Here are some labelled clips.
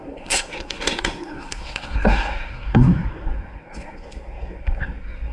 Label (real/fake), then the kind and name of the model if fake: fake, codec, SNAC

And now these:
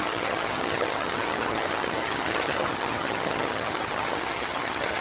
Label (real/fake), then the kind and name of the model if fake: fake, vocoder, HiFi-GAN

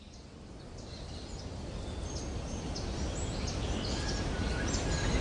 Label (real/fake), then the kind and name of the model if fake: real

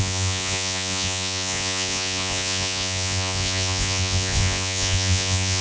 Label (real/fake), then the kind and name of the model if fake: fake, vocoder, Vocos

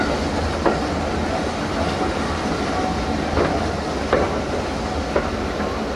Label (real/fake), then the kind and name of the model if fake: real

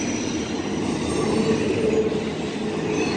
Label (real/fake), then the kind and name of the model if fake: real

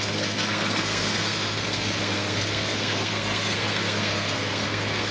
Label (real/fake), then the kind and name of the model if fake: fake, codec, SNAC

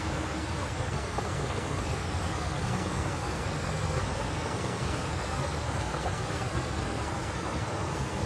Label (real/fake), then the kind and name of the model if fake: fake, codec, SNAC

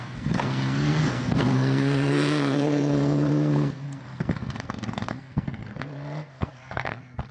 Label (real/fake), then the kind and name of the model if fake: fake, codec, SNAC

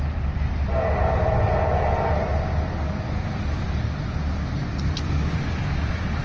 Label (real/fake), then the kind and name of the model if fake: real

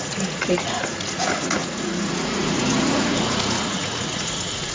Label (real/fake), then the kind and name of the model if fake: fake, vocoder, Vocos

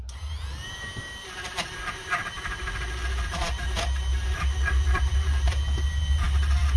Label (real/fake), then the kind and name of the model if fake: real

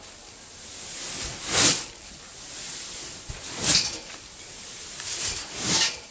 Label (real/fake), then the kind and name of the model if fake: real